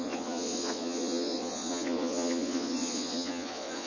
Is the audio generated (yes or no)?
yes